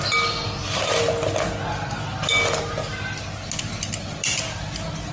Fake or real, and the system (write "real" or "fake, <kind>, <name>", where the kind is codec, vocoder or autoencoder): real